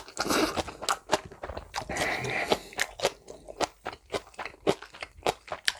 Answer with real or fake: real